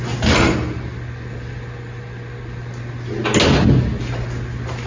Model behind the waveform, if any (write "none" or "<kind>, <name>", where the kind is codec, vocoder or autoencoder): none